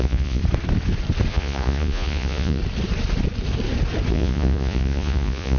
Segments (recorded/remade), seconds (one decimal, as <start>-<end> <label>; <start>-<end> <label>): 0.0-0.4 remade; 0.4-1.3 recorded; 1.3-2.6 remade; 2.6-4.1 recorded; 4.1-5.6 remade